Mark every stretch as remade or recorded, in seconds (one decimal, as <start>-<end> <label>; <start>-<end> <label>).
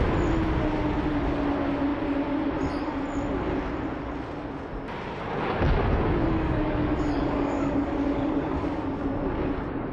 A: 0.0-6.2 recorded; 6.2-9.0 remade; 9.0-9.9 recorded